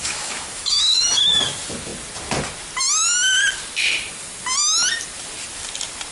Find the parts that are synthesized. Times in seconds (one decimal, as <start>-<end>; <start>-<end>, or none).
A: 0.0-1.4